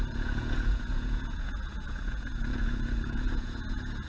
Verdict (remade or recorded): remade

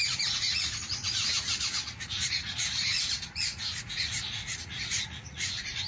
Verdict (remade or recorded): remade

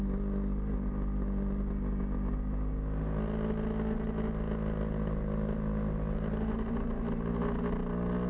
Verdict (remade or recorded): recorded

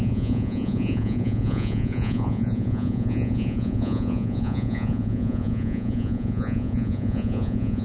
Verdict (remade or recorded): remade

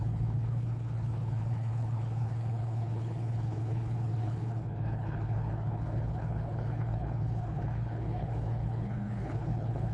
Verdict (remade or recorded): remade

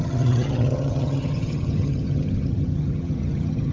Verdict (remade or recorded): remade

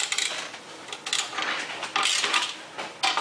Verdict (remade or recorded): recorded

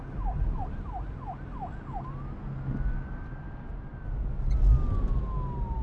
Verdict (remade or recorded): recorded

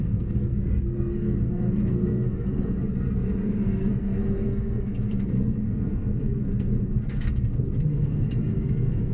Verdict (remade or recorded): remade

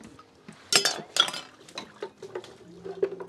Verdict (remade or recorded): recorded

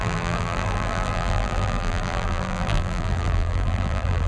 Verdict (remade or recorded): remade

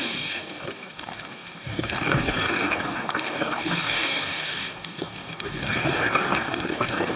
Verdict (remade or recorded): remade